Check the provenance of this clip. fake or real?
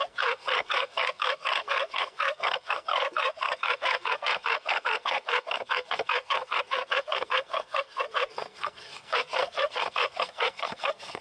fake